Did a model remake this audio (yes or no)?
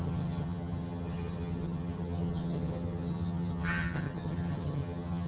yes